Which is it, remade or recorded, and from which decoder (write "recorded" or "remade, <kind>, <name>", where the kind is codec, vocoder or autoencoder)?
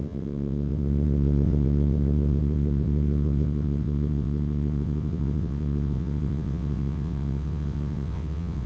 remade, vocoder, WaveNeXt